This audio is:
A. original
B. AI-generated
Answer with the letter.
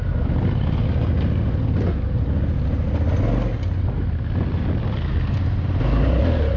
A